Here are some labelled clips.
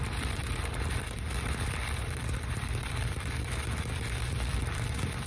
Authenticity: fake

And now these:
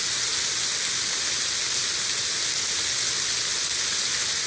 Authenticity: real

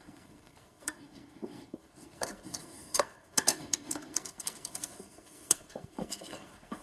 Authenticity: fake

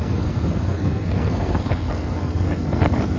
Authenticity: fake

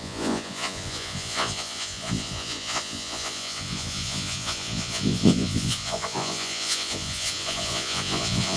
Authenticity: fake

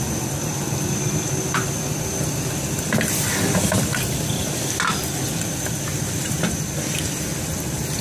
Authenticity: real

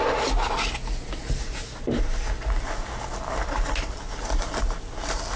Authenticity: real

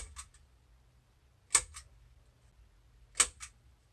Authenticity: real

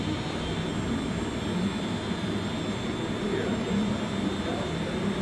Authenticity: real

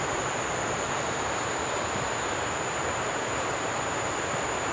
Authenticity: fake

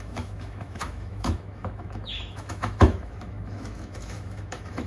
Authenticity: fake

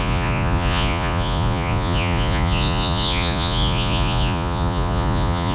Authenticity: fake